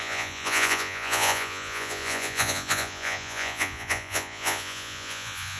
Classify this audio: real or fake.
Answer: fake